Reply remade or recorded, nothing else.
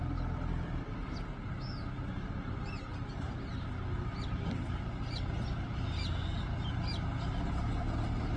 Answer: recorded